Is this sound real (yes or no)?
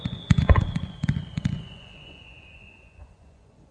no